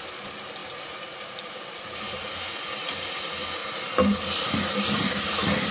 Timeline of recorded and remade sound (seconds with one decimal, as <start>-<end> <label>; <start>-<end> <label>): 0.0-5.7 recorded